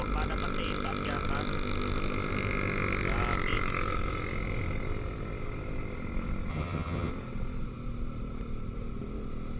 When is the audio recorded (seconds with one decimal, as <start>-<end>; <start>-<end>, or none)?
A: 0.0-6.5; 7.1-9.6